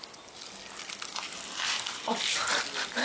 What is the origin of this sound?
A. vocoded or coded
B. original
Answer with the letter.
B